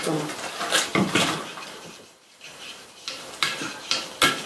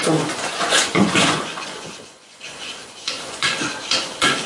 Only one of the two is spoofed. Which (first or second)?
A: second